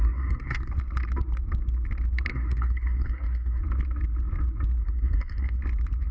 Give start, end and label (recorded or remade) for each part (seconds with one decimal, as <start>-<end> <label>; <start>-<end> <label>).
0.0-0.7 remade; 0.7-2.3 recorded; 2.3-3.6 remade; 3.6-4.8 recorded; 4.8-5.6 remade; 5.6-6.1 recorded